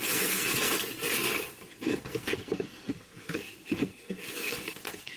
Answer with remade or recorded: remade